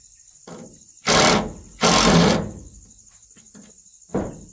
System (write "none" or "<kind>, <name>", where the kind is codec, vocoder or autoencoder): none